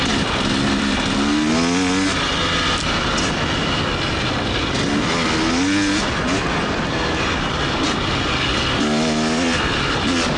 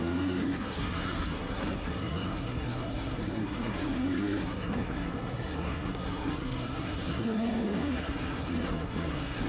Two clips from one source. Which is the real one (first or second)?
first